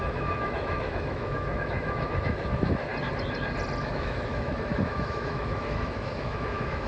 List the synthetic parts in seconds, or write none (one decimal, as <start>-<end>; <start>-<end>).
0.0-2.9; 3.8-6.9